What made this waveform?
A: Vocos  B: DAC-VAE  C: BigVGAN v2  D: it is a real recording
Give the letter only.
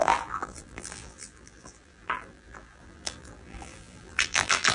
C